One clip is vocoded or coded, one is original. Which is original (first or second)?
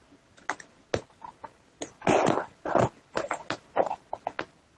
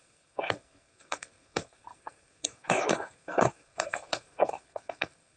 first